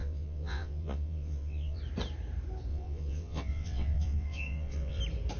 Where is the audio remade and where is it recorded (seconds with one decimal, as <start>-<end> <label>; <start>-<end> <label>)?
0.0-1.8 remade; 1.8-2.7 recorded; 2.7-5.0 remade; 5.0-5.4 recorded